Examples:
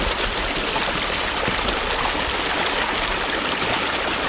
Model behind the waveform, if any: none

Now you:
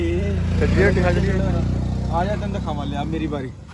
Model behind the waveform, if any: none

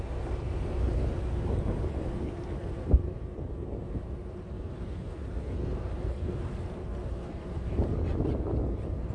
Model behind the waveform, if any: none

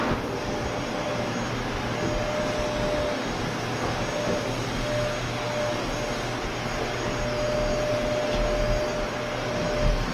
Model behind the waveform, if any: none